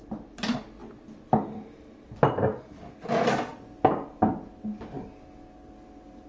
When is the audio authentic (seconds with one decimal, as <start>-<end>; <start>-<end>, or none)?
0.0-6.3